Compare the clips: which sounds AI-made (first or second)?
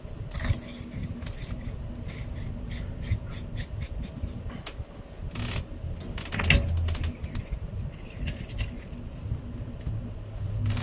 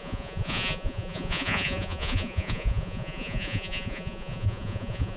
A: second